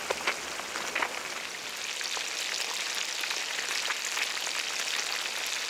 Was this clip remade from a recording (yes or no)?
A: no